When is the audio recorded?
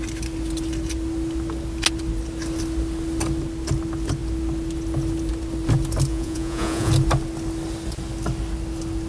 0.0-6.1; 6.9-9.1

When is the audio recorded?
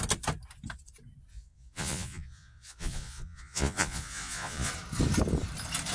0.0-1.3; 4.7-5.9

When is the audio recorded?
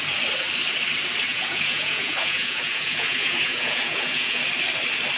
0.0-1.3; 4.4-5.2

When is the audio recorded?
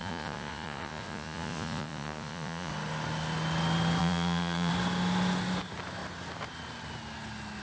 2.7-4.0; 4.7-7.6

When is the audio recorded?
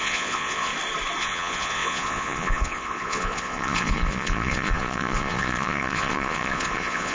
0.7-1.2